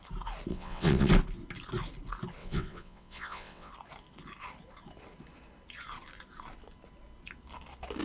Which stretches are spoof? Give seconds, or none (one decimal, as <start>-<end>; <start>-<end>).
0.5-1.1; 2.4-3.7